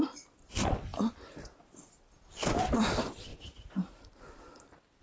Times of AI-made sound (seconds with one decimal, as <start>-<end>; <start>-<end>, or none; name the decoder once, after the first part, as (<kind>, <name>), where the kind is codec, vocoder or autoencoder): 3.3-4.0 (vocoder, Vocos)